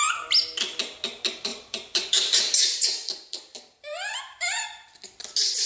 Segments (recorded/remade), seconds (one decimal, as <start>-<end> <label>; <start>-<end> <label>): 0.0-1.5 recorded; 1.5-4.9 remade; 4.9-5.7 recorded